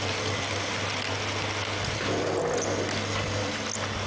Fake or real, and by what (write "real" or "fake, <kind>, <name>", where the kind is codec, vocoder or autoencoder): real